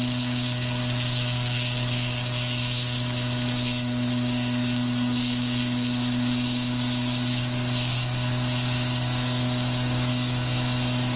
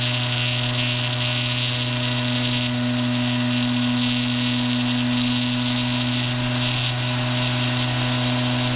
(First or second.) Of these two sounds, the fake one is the first